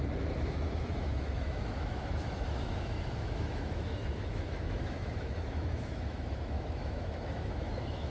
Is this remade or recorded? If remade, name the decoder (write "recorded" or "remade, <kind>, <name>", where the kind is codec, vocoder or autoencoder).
remade, autoencoder, DAC-VAE